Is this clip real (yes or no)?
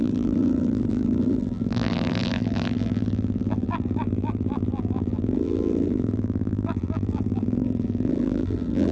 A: no